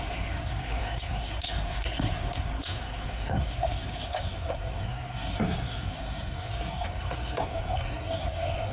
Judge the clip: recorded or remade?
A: remade